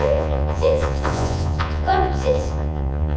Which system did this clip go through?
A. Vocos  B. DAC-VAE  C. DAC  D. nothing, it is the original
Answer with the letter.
A